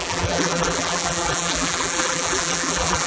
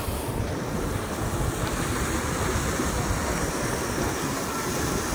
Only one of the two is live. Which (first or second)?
second